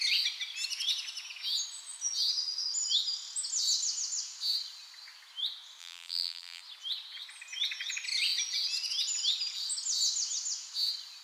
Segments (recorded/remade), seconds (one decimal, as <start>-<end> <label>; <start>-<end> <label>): 0.0-5.8 recorded; 5.8-6.6 remade; 6.6-11.2 recorded